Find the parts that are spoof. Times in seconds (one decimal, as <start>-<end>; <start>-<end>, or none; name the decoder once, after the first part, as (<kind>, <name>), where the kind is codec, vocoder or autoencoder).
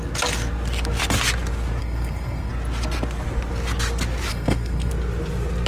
1.8-2.5 (codec, SNAC); 4.3-4.9